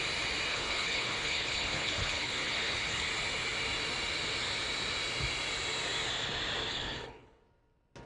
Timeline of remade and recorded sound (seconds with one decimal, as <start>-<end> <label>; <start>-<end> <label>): 0.0-0.5 recorded; 0.5-3.1 remade; 3.1-6.7 recorded; 6.7-7.4 remade; 7.4-8.1 recorded